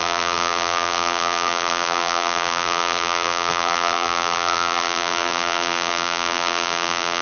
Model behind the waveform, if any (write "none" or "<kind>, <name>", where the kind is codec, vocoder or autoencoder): vocoder, BigVGAN v2